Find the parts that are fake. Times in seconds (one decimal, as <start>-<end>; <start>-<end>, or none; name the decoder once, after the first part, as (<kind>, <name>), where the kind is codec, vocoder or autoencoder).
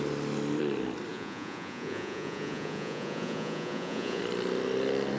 1.1-4.2 (vocoder, Vocos)